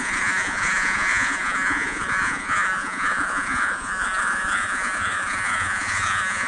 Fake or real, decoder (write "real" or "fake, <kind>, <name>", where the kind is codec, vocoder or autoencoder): fake, vocoder, Vocos